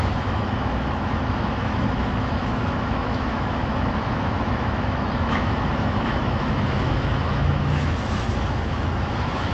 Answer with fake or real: fake